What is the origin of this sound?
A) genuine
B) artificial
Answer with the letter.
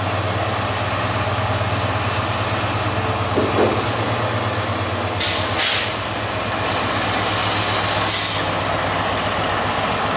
A